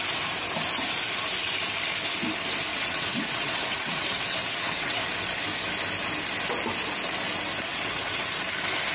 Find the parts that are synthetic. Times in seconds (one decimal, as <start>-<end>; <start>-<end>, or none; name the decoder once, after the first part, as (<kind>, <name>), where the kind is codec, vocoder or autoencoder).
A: 2.7-5.0 (vocoder, WaveNeXt); 7.7-8.3